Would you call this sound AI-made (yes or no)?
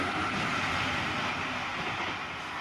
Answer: no